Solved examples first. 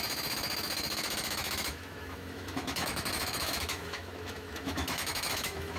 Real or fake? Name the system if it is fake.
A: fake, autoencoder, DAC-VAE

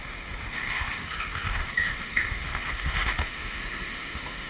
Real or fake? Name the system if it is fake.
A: fake, autoencoder, DAC-VAE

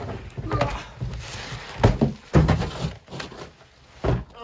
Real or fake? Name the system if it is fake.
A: real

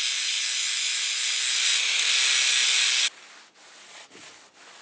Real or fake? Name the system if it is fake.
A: real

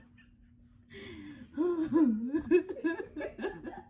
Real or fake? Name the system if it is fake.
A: real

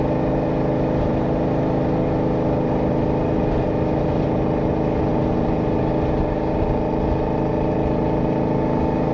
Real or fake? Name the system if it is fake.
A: real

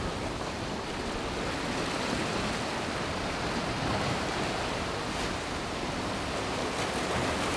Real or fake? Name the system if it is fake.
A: real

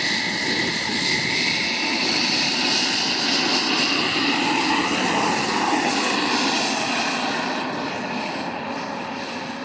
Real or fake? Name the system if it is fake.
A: real